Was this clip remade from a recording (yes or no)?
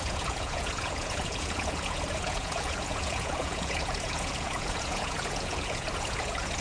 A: yes